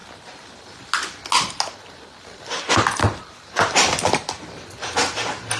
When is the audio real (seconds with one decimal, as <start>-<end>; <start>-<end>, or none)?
0.0-5.6